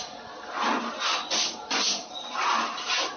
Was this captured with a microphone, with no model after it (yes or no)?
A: yes